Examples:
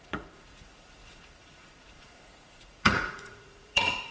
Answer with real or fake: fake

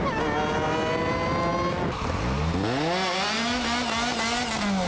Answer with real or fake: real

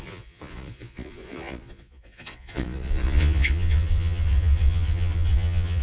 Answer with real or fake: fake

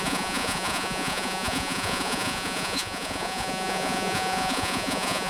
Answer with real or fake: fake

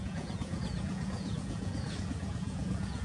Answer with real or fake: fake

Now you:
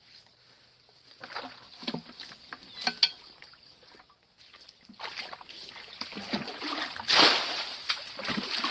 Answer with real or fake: real